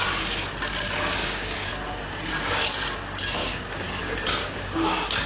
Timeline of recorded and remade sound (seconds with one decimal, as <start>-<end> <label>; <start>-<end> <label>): 0.0-1.2 recorded; 1.2-1.7 remade; 1.7-3.4 recorded; 3.4-4.0 remade; 4.0-4.4 recorded; 4.4-5.3 remade